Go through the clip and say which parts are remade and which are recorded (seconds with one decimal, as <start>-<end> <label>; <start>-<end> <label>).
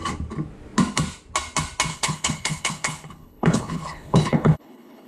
0.0-1.9 recorded; 1.9-5.1 remade